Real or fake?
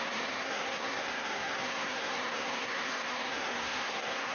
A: fake